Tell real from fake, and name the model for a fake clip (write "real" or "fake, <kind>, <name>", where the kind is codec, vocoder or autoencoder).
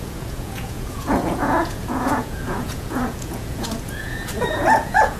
fake, vocoder, Vocos